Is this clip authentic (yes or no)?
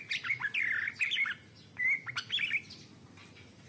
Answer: yes